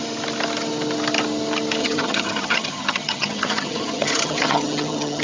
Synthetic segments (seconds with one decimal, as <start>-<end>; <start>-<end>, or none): 1.8-5.2